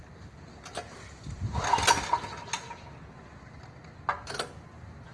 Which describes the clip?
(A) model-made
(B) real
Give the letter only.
B